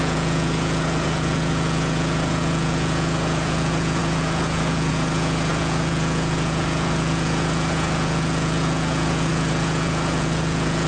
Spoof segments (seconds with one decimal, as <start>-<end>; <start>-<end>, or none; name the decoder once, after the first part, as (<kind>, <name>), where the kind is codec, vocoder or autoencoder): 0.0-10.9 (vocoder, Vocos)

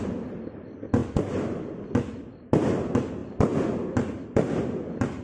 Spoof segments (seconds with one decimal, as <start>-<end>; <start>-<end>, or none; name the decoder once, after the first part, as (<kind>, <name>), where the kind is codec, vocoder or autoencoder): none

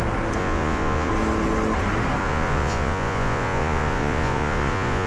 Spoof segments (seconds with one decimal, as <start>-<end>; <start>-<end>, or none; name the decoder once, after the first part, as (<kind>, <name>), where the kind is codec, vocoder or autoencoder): 0.4-1.1 (vocoder, Vocos); 2.2-5.1

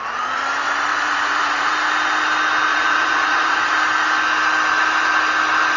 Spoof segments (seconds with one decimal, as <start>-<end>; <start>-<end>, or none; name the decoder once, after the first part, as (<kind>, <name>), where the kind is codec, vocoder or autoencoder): 0.9-1.7 (vocoder, Vocos); 2.7-3.7

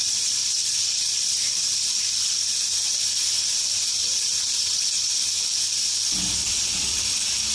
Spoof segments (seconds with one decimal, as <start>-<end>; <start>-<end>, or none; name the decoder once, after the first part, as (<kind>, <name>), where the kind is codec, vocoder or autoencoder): 0.0-1.4 (vocoder, Vocos); 4.0-5.1; 6.4-7.0